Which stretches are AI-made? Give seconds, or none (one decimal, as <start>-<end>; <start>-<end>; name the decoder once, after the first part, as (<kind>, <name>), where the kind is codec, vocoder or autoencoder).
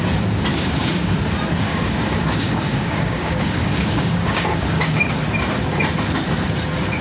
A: 0.5-1.2 (codec, DAC); 1.7-5.1